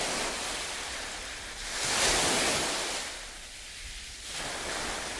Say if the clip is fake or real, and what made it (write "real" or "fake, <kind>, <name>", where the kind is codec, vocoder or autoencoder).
real